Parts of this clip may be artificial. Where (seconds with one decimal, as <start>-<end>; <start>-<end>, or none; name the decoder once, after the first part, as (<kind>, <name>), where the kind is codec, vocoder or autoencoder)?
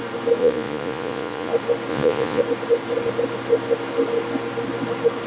0.4-1.5 (vocoder, Vocos); 1.9-2.4